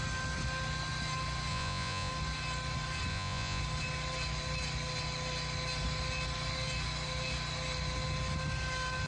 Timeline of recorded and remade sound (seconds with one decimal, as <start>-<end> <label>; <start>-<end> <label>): 0.0-1.5 recorded; 1.5-2.1 remade; 2.1-3.1 recorded; 3.1-3.6 remade; 3.6-9.1 recorded

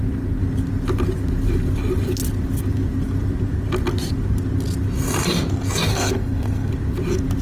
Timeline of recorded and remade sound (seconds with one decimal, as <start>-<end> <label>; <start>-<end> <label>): 0.0-5.9 recorded; 5.9-6.7 remade; 6.7-7.4 recorded

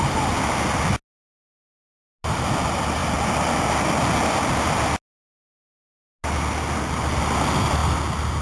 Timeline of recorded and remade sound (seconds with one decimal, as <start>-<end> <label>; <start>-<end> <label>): 0.0-8.4 recorded

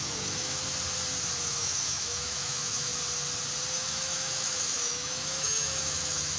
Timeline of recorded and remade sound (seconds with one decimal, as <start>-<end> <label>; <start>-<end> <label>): 0.0-0.6 remade; 0.6-1.4 recorded; 1.4-2.9 remade; 2.9-3.7 recorded; 3.7-6.4 remade

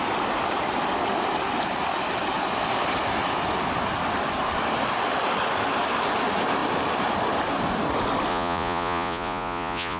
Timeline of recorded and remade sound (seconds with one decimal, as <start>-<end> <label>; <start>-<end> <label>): 0.0-8.3 recorded; 8.3-10.0 remade

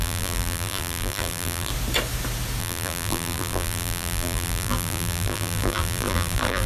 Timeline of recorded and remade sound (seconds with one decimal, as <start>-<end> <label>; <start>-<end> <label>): 0.0-1.7 remade; 1.7-2.6 recorded; 2.6-6.7 remade

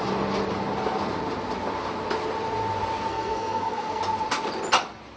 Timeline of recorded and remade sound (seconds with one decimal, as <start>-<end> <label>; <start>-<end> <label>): 0.0-3.1 recorded; 3.1-4.0 remade; 4.0-5.2 recorded

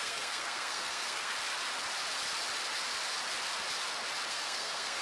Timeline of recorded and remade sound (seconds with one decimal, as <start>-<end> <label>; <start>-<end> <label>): 0.0-1.3 remade; 1.3-4.3 recorded; 4.3-5.0 remade